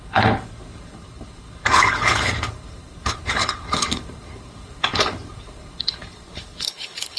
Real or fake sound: fake